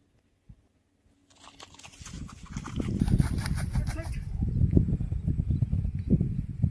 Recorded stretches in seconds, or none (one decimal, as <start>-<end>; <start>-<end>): 0.0-6.7